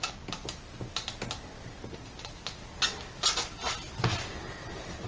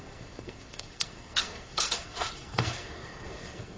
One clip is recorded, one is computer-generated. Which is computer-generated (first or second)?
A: second